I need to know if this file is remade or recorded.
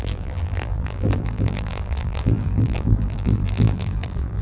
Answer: remade